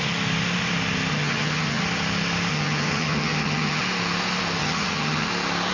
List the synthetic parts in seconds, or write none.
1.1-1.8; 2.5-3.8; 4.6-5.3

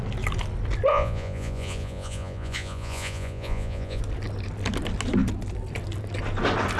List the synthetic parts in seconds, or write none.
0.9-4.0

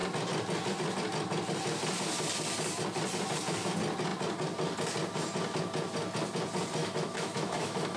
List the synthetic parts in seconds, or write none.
6.8-8.0